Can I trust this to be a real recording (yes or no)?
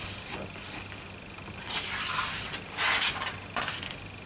yes